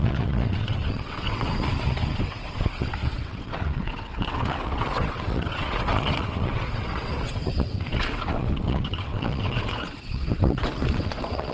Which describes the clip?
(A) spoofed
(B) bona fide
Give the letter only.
A